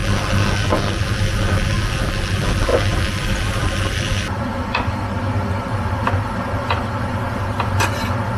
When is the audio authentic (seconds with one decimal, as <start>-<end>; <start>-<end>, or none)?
0.0-8.4